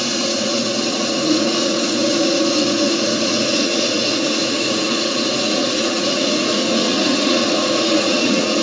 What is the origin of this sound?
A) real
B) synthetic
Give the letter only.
B